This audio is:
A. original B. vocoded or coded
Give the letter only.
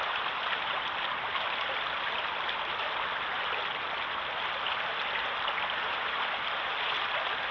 A